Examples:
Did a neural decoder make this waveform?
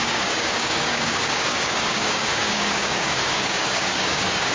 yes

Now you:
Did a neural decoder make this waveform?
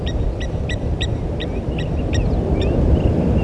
yes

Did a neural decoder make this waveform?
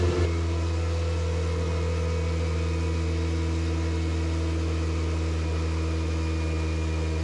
no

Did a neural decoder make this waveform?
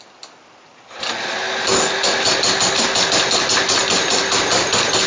no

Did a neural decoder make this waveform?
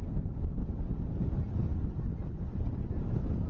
no